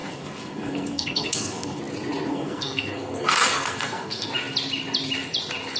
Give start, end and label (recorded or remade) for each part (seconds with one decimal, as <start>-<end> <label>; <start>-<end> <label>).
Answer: 0.0-1.8 remade; 1.8-2.3 recorded; 2.3-4.3 remade; 4.3-5.8 recorded